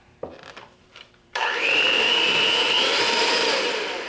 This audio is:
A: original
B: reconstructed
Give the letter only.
B